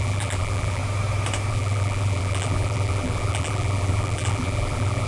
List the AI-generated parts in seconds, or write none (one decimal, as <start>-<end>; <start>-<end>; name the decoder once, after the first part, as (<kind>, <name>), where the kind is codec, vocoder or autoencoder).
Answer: 0.0-0.8 (vocoder, BigVGAN v2); 1.5-5.1